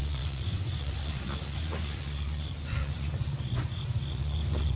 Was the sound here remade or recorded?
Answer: remade